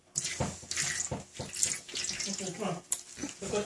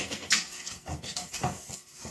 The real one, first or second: first